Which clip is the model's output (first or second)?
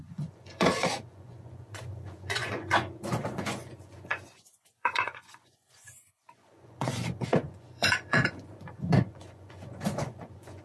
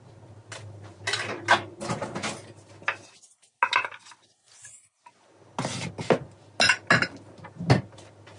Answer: first